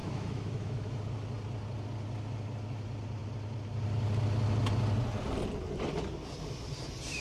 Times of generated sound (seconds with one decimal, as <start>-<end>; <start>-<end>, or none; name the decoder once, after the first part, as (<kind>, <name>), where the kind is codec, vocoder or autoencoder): 0.0-1.0 (autoencoder, DAC-VAE)